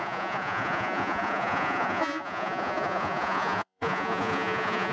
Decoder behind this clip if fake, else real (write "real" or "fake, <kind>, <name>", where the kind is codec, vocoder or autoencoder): fake, vocoder, Vocos